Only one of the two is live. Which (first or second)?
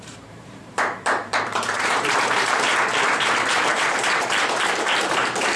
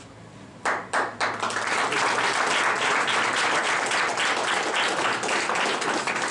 second